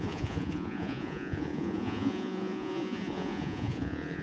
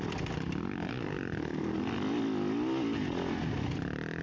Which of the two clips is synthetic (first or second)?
first